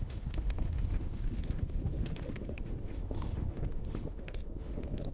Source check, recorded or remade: remade